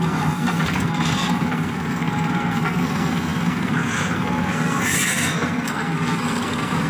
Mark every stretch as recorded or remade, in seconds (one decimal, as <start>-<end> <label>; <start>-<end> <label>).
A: 0.0-6.9 remade